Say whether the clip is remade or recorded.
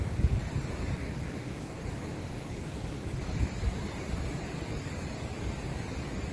remade